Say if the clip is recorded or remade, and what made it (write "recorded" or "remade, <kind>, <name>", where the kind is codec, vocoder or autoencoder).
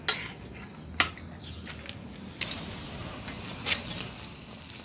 recorded